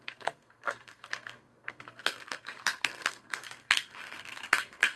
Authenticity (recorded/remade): remade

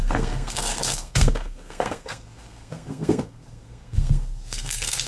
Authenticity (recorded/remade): remade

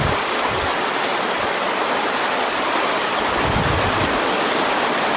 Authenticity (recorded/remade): recorded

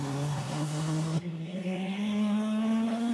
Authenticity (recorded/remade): remade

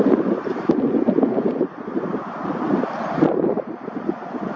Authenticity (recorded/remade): recorded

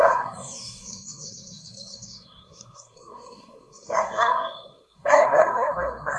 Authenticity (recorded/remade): remade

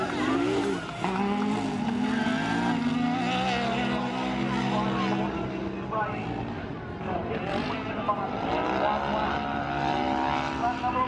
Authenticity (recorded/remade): recorded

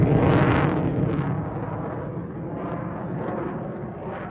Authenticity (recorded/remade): recorded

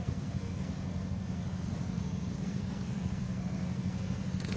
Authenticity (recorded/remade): remade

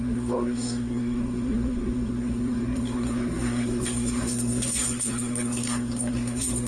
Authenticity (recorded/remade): remade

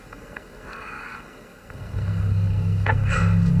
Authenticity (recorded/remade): remade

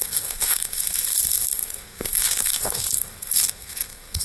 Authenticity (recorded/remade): remade